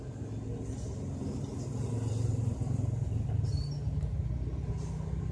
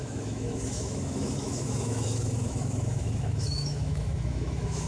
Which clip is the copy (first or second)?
second